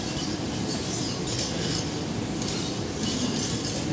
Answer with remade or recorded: recorded